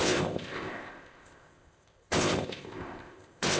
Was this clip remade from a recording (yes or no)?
yes